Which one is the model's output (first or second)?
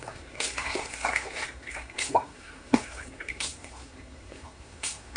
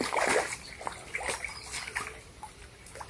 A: first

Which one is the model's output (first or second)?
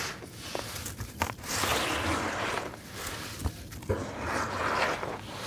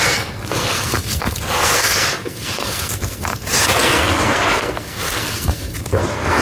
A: second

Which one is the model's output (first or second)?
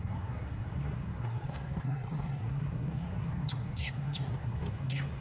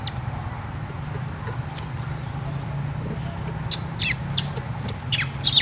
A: first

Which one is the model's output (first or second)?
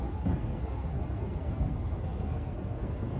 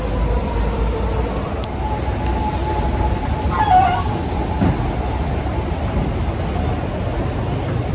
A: first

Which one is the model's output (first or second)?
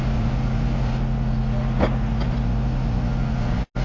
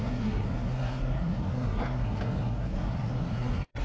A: second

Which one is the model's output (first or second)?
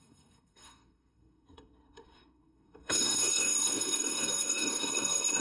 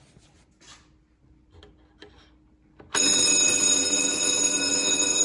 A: first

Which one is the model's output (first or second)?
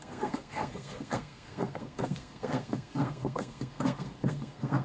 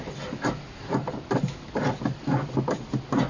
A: first